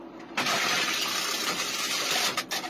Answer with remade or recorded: recorded